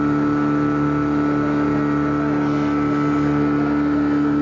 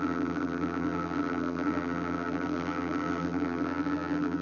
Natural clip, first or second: first